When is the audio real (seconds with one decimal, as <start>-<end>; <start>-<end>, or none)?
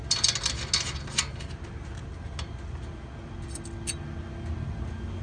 0.0-5.2